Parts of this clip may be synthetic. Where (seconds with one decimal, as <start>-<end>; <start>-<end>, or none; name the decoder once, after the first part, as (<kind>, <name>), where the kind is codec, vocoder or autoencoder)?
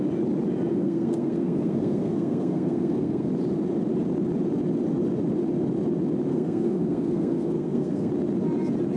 0.7-3.3 (codec, SNAC); 6.3-8.1